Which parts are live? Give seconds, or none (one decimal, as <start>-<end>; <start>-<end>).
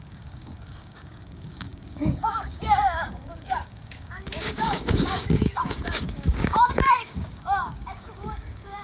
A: none